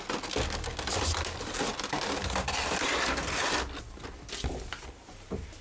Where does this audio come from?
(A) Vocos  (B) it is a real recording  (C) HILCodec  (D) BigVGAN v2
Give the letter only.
B